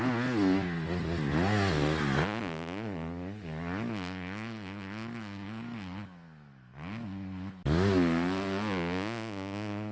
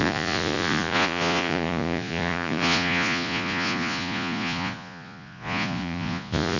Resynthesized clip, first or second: second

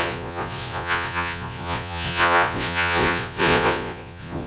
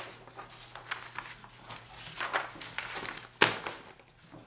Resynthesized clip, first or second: first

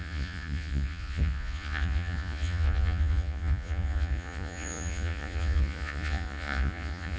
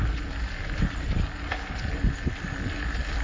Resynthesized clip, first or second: first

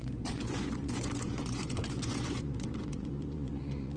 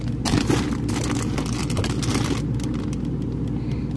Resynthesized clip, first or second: first